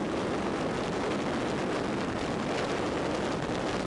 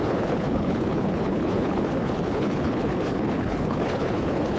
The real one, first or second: first